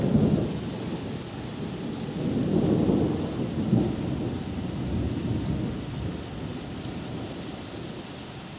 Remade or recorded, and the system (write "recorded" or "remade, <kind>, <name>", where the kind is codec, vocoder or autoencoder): recorded